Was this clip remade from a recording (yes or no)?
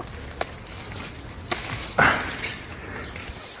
no